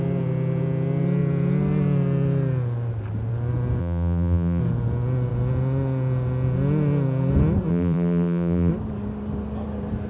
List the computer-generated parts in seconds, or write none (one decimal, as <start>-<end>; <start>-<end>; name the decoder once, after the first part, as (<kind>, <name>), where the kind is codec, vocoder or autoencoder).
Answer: 3.8-4.6 (vocoder, BigVGAN v2); 7.7-8.7